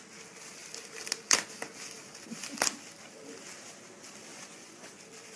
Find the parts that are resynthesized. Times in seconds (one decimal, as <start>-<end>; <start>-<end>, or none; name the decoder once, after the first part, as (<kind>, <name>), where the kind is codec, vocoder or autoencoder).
4.3-5.0 (vocoder, Vocos)